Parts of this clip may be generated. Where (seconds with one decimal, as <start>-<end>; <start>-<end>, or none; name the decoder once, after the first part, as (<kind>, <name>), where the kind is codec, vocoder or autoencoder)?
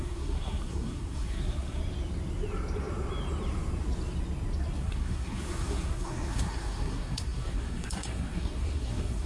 0.0-1.8 (codec, SNAC); 4.8-9.3